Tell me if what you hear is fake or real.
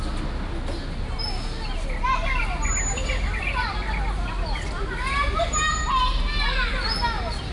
real